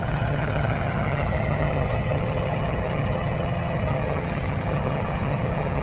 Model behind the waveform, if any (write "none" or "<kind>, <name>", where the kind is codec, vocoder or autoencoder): vocoder, HiFi-GAN